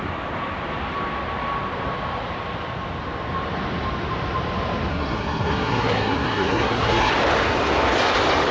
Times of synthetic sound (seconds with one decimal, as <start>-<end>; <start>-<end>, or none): 4.9-7.1